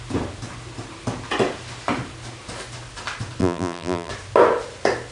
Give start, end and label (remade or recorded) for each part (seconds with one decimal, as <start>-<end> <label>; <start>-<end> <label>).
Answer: 0.0-3.4 recorded; 3.4-4.1 remade; 4.1-5.1 recorded